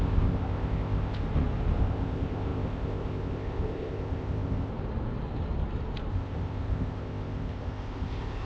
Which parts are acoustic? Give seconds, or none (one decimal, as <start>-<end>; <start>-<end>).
1.2-1.8; 4.7-6.1